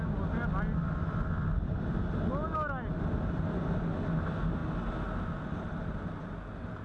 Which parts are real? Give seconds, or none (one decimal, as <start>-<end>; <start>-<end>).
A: 0.0-6.8